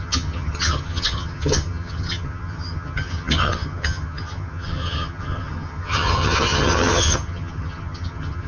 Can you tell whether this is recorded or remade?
remade